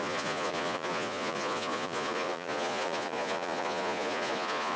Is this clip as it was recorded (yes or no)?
no